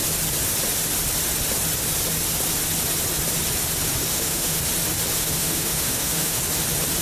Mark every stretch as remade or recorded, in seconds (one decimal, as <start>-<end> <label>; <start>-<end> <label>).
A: 0.0-4.1 recorded; 4.1-4.6 remade; 4.6-5.2 recorded; 5.2-6.4 remade; 6.4-7.0 recorded